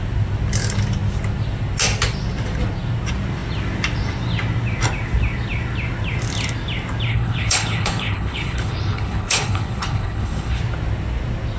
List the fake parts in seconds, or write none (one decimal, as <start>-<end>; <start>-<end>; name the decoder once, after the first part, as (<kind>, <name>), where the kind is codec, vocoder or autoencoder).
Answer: 7.1-10.6 (codec, HILCodec)